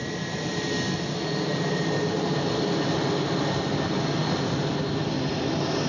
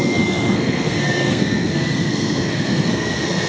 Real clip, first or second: first